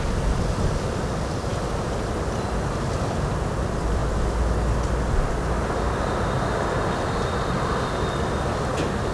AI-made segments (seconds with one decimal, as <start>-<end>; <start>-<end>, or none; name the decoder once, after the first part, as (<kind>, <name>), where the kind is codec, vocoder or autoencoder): none